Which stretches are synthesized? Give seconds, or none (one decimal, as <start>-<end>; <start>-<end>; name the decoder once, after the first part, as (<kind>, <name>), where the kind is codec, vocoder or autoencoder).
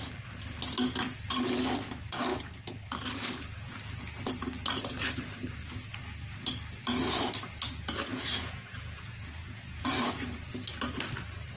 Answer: 8.1-9.9 (vocoder, Vocos)